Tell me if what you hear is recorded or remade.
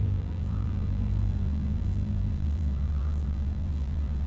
remade